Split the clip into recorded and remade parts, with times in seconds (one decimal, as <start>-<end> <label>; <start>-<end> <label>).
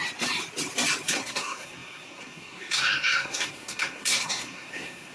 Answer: 0.0-1.1 recorded; 1.1-5.1 remade